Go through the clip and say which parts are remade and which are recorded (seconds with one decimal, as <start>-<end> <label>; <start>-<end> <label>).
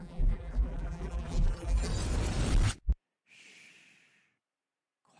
0.0-1.9 remade; 1.9-5.2 recorded